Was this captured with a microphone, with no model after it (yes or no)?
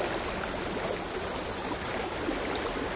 yes